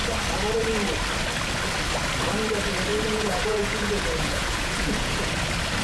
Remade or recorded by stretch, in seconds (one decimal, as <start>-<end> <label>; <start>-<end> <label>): 0.0-2.9 recorded; 2.9-5.3 remade; 5.3-5.8 recorded